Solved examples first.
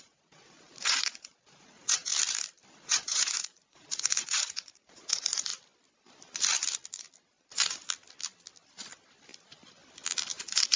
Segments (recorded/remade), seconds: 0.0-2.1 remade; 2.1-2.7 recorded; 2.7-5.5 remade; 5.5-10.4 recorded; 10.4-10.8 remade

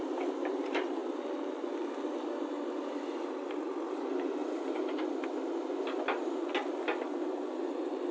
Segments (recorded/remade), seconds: 0.0-1.0 recorded; 1.0-1.7 remade; 1.7-8.1 recorded